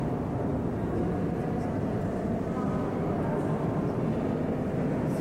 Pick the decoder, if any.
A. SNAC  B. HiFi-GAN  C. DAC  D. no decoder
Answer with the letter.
D